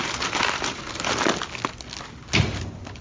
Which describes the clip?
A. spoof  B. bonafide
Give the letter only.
B